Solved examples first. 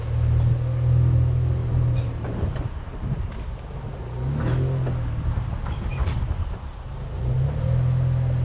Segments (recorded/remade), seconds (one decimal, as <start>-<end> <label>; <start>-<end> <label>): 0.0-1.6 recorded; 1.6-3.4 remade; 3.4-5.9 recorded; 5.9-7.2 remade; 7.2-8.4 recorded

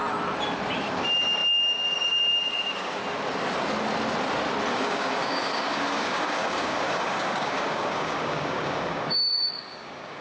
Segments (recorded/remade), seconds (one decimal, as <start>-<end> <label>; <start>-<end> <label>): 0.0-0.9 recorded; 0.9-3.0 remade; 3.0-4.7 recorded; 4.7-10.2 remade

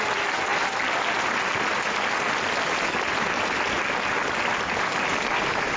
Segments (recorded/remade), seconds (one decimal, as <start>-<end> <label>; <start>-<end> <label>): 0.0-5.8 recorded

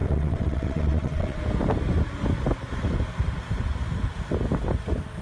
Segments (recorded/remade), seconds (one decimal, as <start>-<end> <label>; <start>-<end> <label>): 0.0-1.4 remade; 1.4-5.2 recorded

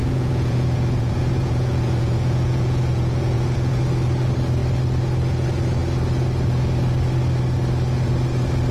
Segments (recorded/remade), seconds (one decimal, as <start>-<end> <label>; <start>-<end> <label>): 0.0-3.8 remade; 3.8-8.7 recorded

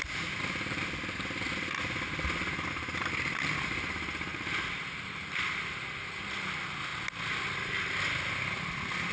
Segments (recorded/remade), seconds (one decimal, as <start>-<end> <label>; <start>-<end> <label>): 0.0-9.1 recorded

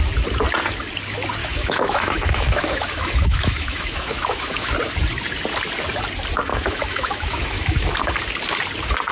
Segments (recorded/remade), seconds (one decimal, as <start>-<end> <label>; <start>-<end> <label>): 0.0-1.4 recorded; 1.4-4.7 remade; 4.7-6.5 recorded; 6.5-7.9 remade; 7.9-9.1 recorded

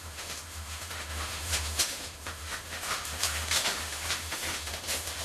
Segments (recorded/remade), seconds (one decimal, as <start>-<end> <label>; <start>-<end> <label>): 0.0-5.2 remade